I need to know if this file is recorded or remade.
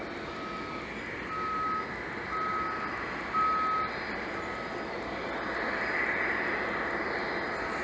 recorded